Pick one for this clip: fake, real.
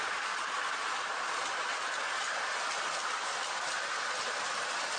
real